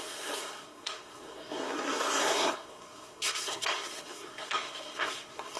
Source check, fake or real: fake